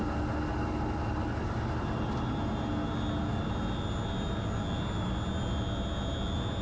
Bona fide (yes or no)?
yes